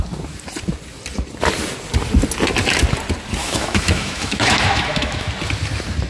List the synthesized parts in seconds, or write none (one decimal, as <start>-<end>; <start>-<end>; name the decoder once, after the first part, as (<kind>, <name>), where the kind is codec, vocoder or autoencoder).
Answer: 3.4-5.3 (autoencoder, DAC-VAE)